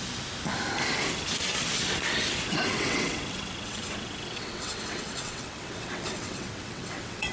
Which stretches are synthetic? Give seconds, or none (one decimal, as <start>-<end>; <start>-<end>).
2.7-7.3